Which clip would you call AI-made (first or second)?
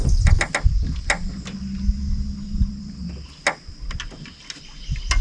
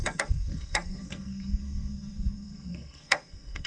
second